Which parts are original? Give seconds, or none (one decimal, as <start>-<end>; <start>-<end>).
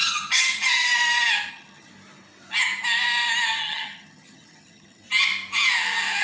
0.9-1.5; 1.9-3.6; 5.0-6.2